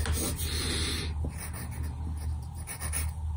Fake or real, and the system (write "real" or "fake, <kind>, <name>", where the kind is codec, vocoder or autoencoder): real